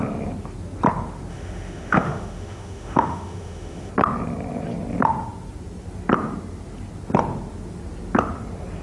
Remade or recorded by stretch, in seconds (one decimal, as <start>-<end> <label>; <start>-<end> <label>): 0.0-1.3 recorded; 1.3-3.9 remade; 3.9-8.8 recorded